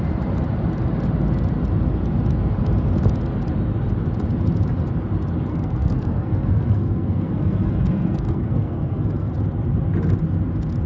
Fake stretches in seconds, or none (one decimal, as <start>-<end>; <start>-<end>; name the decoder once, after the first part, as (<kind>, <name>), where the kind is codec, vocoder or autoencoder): 5.5-9.3 (codec, SNAC)